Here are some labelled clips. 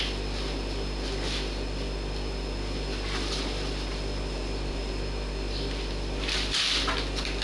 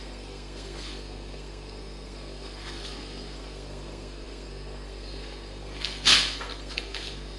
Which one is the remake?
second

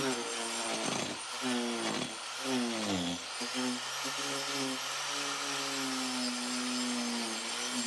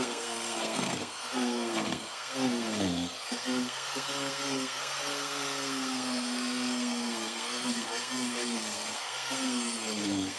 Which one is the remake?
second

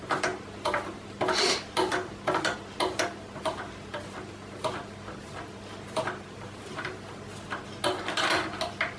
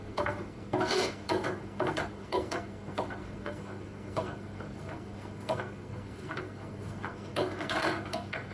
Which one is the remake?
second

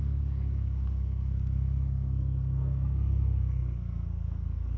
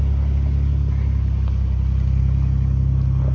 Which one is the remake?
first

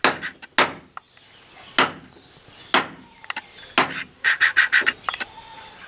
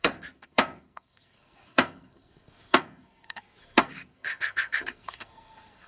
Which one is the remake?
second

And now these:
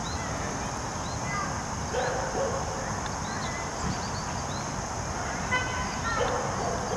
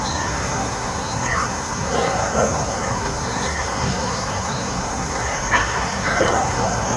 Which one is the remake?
second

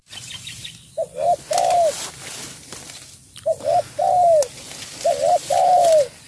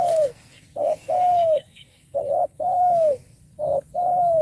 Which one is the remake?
second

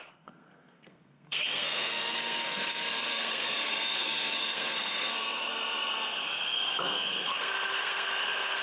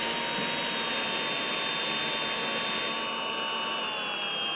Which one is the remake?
first